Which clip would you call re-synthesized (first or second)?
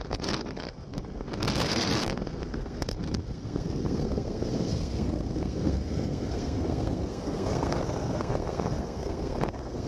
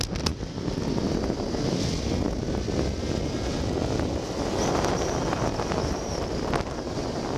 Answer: first